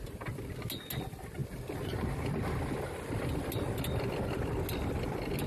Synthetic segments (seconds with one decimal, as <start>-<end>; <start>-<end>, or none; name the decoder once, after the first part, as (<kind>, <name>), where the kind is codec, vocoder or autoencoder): none